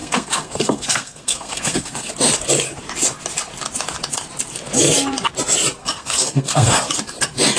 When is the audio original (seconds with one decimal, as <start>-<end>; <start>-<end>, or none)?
2.1-5.8; 6.9-7.6